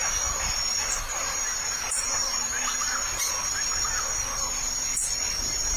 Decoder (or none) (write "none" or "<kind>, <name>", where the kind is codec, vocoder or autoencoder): none